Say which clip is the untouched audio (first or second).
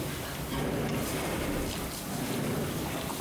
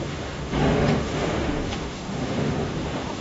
first